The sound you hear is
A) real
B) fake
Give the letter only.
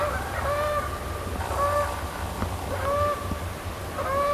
A